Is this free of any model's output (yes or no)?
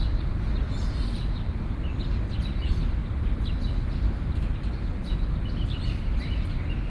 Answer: yes